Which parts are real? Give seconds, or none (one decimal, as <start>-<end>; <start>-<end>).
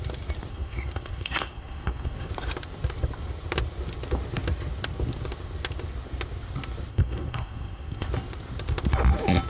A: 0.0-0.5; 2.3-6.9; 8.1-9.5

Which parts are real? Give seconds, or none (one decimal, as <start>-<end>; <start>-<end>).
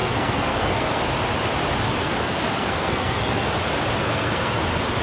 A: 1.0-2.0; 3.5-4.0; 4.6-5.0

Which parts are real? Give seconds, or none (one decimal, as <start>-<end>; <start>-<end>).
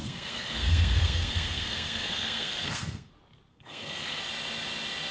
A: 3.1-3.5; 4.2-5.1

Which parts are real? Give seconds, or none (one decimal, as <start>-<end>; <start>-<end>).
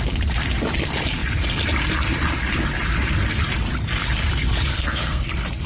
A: 0.0-4.7; 5.3-5.7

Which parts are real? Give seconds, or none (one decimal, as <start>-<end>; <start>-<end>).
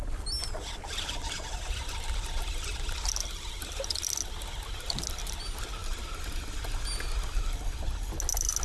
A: 0.0-8.6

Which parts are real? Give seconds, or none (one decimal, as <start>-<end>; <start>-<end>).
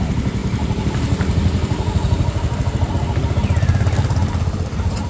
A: 0.0-5.1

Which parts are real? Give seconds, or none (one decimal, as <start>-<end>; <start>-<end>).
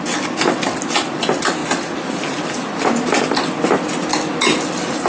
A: 0.0-5.1